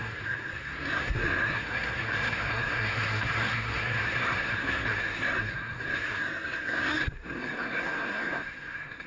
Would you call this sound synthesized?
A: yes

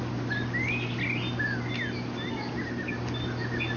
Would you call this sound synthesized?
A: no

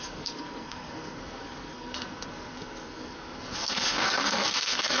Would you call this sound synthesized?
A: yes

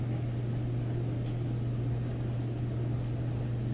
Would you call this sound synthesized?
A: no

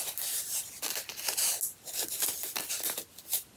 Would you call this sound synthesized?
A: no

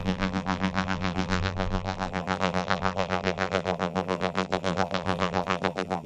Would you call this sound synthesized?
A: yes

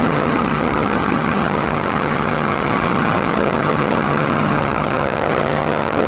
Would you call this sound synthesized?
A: yes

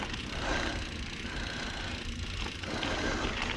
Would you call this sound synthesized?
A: no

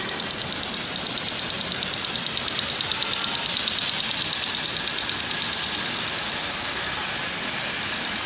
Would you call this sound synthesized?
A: no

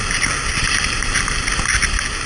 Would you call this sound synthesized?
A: no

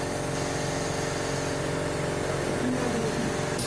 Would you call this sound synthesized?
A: no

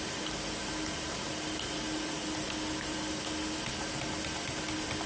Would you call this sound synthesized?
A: no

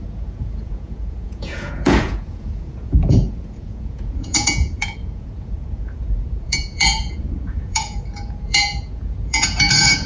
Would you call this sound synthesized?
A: yes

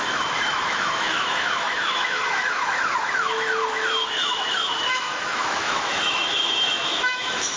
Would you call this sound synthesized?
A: yes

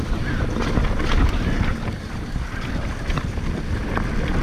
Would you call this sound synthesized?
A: no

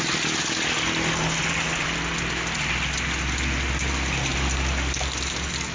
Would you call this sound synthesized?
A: no